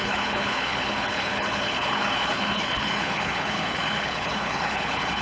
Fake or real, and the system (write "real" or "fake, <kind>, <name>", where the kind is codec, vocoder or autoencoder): fake, codec, HILCodec